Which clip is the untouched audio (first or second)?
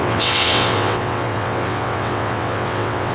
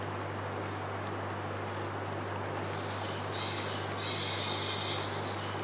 second